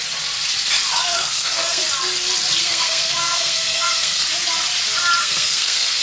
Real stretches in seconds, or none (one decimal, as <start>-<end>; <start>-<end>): 0.0-1.0; 1.8-2.6; 4.2-5.2